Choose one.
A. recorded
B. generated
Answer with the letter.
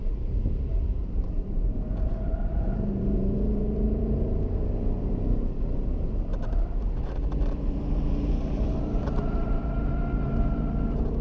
B